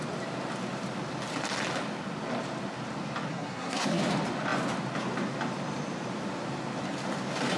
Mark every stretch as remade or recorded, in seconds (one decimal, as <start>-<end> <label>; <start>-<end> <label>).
0.0-3.3 recorded; 3.3-4.0 remade; 4.0-7.6 recorded